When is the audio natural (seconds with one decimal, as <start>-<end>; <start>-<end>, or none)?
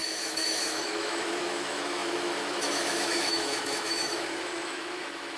none